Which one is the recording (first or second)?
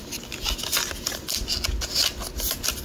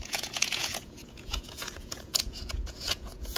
first